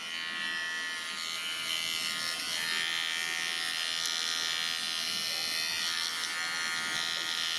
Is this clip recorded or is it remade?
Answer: recorded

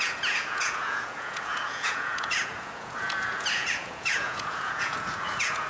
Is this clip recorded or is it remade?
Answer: remade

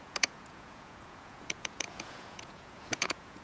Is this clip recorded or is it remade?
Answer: remade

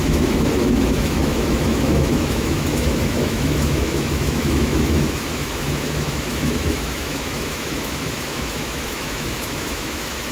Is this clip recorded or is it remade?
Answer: remade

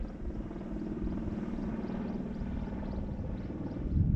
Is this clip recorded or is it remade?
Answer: remade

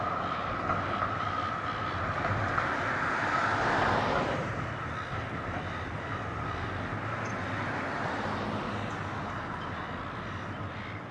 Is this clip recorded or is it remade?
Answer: recorded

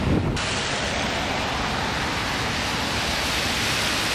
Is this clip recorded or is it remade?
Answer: recorded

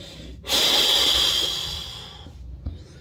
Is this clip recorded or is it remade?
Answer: recorded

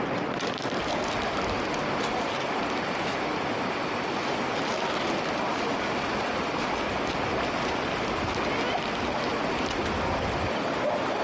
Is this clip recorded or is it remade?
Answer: recorded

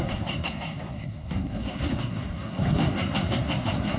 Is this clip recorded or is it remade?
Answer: remade